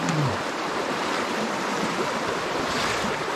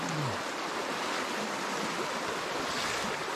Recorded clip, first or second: second